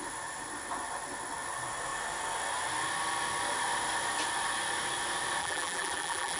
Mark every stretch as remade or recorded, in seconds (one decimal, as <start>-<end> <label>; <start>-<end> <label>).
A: 0.0-5.4 recorded; 5.4-6.4 remade